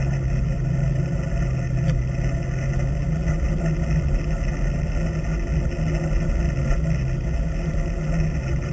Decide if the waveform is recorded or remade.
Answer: recorded